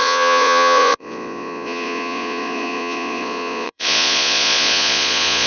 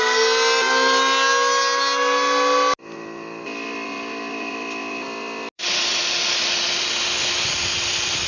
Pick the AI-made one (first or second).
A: first